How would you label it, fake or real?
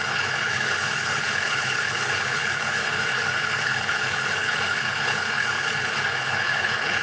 fake